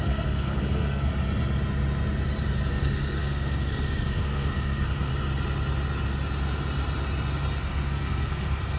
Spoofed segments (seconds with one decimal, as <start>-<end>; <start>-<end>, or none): 0.0-1.1; 2.7-5.1; 7.6-8.8